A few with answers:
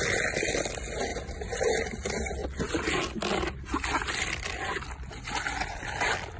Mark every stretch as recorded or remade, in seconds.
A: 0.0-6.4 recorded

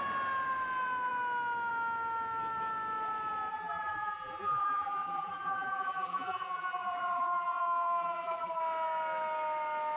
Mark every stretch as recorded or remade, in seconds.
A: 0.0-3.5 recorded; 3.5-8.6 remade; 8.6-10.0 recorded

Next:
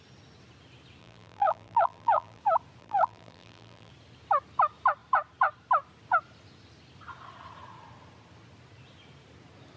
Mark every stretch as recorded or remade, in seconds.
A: 0.0-1.0 recorded; 1.0-2.4 remade; 2.4-2.8 recorded; 2.8-3.9 remade; 3.9-9.8 recorded

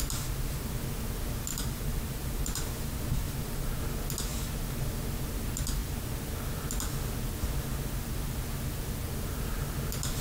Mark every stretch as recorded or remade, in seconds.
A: 0.0-1.5 recorded; 1.5-3.8 remade; 3.8-10.2 recorded

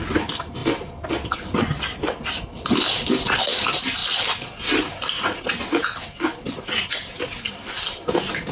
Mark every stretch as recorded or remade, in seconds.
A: 0.0-8.5 recorded